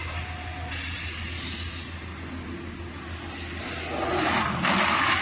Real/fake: real